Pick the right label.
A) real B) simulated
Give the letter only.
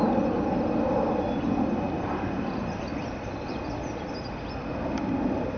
A